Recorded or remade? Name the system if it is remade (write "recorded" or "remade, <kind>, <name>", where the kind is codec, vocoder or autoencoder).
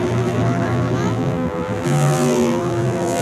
remade, vocoder, BigVGAN v2